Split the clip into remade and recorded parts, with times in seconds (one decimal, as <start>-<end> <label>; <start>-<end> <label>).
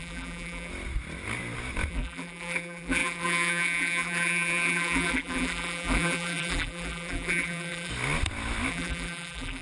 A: 0.0-0.7 remade; 0.7-1.9 recorded; 1.9-7.9 remade; 7.9-8.7 recorded; 8.7-9.6 remade